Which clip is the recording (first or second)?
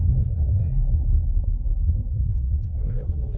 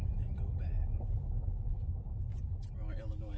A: second